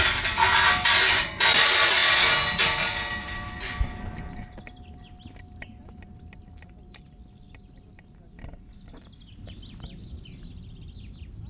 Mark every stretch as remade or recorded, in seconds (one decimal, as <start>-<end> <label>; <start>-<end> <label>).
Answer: 0.0-11.5 recorded